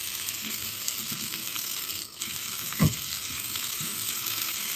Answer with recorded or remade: remade